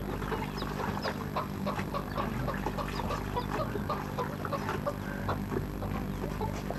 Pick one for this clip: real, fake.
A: real